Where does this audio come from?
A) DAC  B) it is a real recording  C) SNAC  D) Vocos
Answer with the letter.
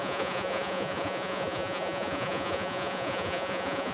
D